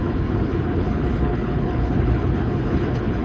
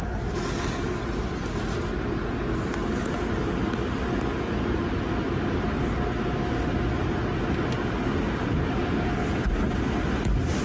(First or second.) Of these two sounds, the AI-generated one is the first